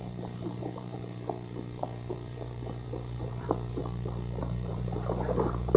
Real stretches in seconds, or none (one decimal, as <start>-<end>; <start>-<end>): 3.8-4.4